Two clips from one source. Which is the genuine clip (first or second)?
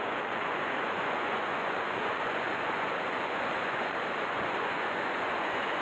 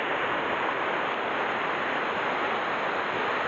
second